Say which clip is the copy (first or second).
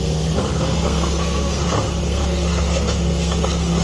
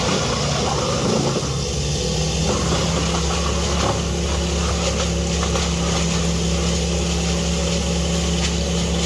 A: first